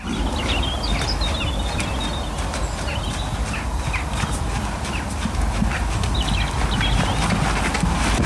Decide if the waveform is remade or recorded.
recorded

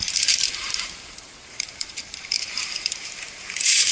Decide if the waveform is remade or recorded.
remade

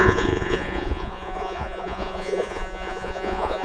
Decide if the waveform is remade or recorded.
remade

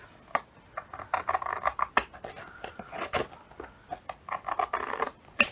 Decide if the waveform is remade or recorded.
recorded